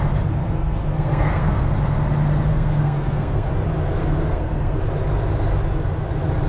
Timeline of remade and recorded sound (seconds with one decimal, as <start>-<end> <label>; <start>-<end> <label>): 0.0-0.4 recorded; 0.4-1.7 remade; 1.7-2.5 recorded; 2.5-3.5 remade; 3.5-4.0 recorded; 4.0-4.8 remade; 4.8-6.5 recorded